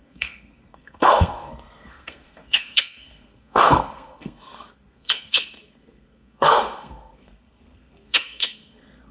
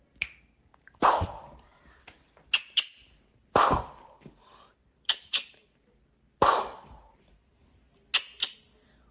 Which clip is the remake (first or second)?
first